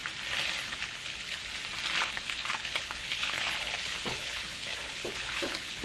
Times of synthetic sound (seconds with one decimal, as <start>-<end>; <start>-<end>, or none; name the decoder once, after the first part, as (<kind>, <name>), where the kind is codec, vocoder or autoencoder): 0.6-1.4 (codec, HILCodec); 2.0-5.8